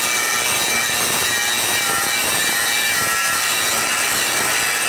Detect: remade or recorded recorded